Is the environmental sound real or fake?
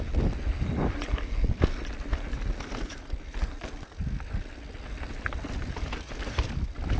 real